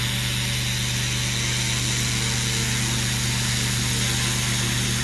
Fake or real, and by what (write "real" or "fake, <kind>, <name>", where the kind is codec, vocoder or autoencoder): real